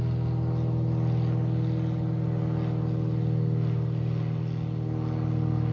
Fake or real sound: real